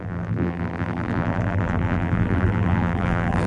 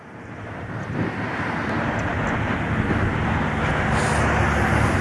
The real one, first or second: second